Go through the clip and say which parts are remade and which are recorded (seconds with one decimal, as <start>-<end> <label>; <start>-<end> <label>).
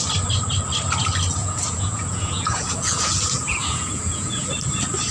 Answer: 0.0-1.4 recorded; 1.4-4.5 remade; 4.5-5.1 recorded